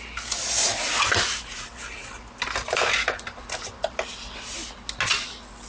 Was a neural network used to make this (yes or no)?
no